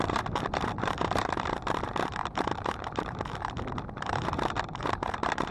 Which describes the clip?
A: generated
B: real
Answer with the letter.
A